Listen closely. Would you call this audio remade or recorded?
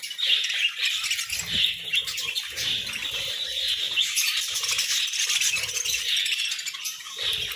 recorded